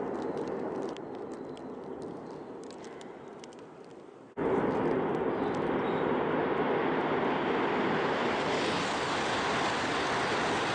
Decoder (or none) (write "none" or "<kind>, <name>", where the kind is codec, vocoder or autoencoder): none